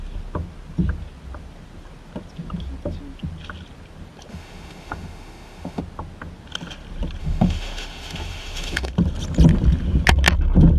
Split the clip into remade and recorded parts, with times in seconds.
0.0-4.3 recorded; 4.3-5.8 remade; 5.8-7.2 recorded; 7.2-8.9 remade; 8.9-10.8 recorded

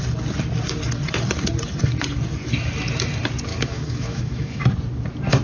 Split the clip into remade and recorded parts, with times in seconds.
0.0-3.5 recorded; 3.5-4.6 remade; 4.6-5.4 recorded

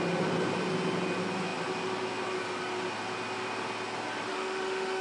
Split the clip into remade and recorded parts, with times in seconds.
0.0-4.3 recorded; 4.3-5.0 remade